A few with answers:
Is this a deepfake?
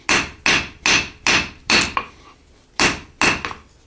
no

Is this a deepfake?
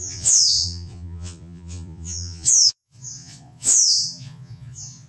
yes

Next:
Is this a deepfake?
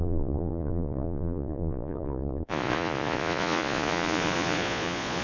yes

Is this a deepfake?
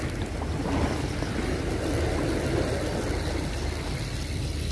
no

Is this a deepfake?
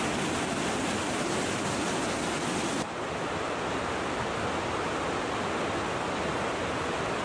no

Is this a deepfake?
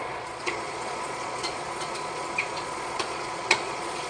yes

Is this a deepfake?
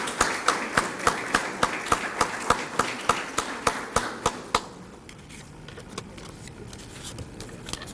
no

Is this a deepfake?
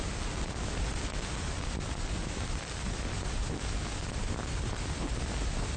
no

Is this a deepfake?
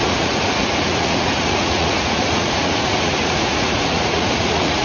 yes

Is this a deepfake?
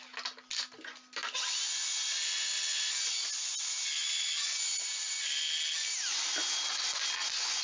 no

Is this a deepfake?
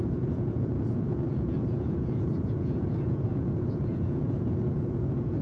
yes